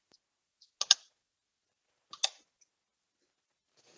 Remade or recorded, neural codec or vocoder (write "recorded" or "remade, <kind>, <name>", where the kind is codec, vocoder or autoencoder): recorded